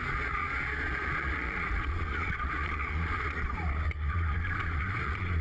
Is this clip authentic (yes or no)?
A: no